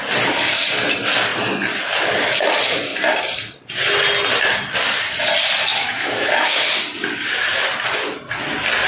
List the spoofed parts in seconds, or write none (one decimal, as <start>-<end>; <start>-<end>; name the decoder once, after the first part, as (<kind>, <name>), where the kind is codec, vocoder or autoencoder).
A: 5.7-6.7 (autoencoder, DAC-VAE)